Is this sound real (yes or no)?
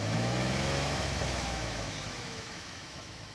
no